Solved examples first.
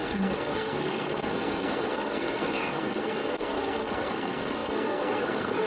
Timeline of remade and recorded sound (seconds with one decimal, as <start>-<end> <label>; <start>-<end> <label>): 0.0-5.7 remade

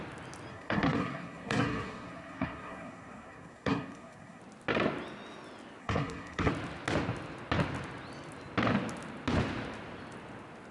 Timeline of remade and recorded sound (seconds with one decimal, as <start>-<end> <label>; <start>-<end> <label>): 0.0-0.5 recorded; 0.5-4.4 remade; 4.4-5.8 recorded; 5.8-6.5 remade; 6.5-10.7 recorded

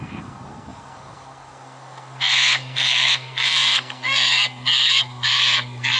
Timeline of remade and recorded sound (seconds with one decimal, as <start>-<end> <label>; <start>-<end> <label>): 0.0-6.0 remade

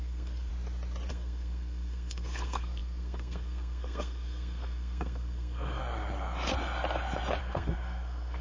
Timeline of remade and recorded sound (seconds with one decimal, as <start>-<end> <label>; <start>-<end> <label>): 0.0-0.5 remade; 0.5-1.1 recorded; 1.1-5.8 remade; 5.8-7.4 recorded; 7.4-8.4 remade

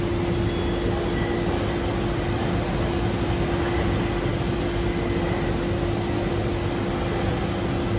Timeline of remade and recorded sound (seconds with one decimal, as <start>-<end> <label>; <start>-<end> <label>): 0.0-8.0 recorded

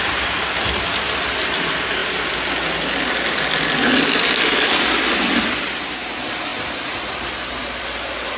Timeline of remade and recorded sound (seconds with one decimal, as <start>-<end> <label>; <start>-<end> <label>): 0.0-8.4 recorded